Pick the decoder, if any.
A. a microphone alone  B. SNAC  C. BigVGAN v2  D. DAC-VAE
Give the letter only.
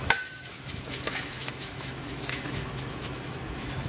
D